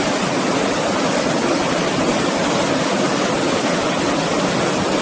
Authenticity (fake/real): real